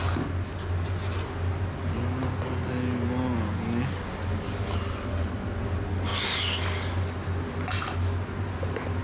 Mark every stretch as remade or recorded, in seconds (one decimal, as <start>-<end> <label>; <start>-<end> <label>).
0.0-9.0 recorded